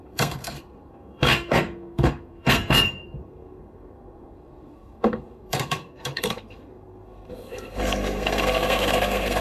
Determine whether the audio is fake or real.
fake